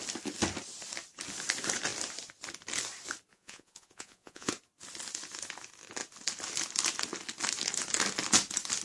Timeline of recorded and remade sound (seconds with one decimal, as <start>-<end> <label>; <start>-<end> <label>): 0.0-3.3 recorded; 3.3-4.5 remade; 4.5-8.8 recorded

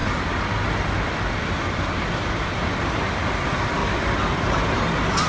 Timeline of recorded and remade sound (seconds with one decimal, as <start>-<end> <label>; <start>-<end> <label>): 0.0-5.3 recorded

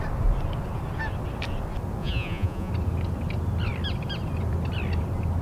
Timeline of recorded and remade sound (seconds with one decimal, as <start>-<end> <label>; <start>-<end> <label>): 0.0-2.0 recorded; 2.0-2.7 remade; 2.7-5.4 recorded

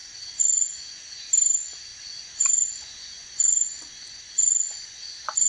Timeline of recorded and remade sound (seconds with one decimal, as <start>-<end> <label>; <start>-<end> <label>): 0.0-1.3 remade; 1.3-1.9 recorded; 1.9-5.5 remade

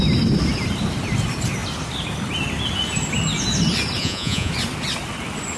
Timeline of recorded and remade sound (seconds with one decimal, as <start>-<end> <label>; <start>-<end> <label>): 0.0-4.0 recorded; 4.0-4.5 remade; 4.5-5.6 recorded

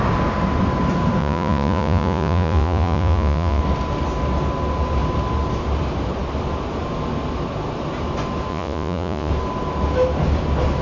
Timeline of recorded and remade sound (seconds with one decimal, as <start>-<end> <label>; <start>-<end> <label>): 0.0-1.2 recorded; 1.2-3.6 remade; 3.6-8.5 recorded; 8.5-9.3 remade; 9.3-10.8 recorded

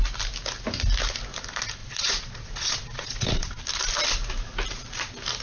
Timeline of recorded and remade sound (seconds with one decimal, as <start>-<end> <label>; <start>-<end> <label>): 0.0-1.8 recorded; 1.8-3.6 remade; 3.6-5.4 recorded

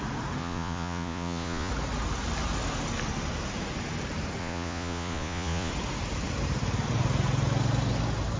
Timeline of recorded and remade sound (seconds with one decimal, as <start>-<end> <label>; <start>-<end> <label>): 0.0-0.4 recorded; 0.4-1.7 remade; 1.7-4.4 recorded; 4.4-5.7 remade; 5.7-8.4 recorded